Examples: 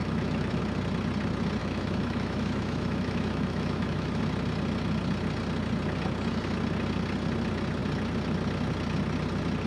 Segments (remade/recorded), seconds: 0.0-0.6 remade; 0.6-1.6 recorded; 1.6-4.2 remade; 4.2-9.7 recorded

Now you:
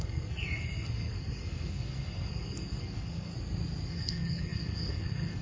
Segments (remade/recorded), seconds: 0.0-3.3 remade; 3.3-3.9 recorded; 3.9-5.4 remade

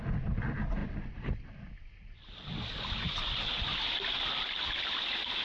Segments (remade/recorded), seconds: 0.0-5.4 recorded

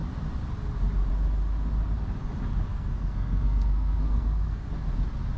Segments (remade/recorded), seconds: 0.0-2.7 recorded; 2.7-4.7 remade; 4.7-5.4 recorded

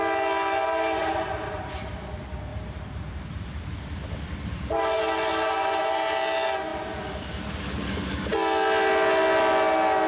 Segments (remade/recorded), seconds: 0.0-1.0 recorded; 1.0-1.9 remade; 1.9-2.5 recorded; 2.5-3.7 remade; 3.7-10.1 recorded

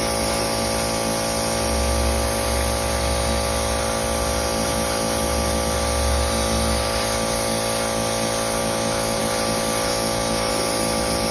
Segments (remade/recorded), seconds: 0.0-8.6 recorded; 8.6-9.2 remade; 9.2-9.9 recorded; 9.9-10.5 remade; 10.5-11.3 recorded

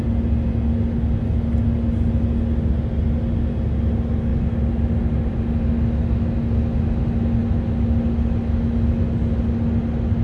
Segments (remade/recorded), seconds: 0.0-10.2 recorded

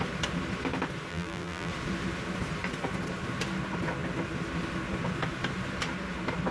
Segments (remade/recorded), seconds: 0.0-1.1 recorded; 1.1-1.7 remade; 1.7-6.5 recorded